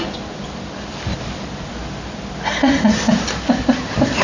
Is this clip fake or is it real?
real